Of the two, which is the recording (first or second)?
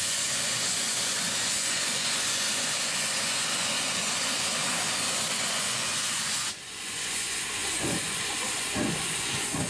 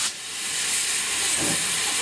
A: second